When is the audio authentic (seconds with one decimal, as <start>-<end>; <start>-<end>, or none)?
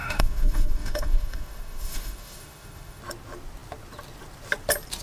3.0-5.0